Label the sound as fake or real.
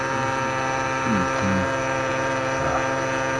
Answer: real